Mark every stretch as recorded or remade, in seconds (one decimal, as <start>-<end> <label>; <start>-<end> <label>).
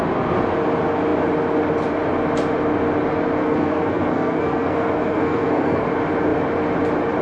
0.0-3.4 recorded; 3.4-5.8 remade; 5.8-7.2 recorded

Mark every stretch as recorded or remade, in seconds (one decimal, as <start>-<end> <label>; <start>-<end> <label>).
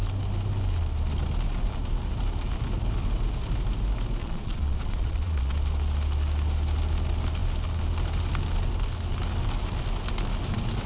0.0-4.2 recorded; 4.2-5.5 remade; 5.5-10.9 recorded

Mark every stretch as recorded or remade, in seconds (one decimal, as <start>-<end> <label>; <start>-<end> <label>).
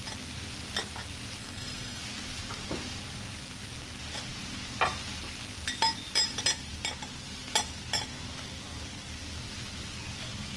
0.0-1.4 recorded; 1.4-2.0 remade; 2.0-10.6 recorded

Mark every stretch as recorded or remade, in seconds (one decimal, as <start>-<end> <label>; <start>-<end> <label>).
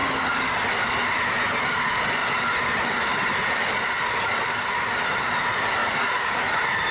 0.0-5.8 recorded; 5.8-6.4 remade; 6.4-6.9 recorded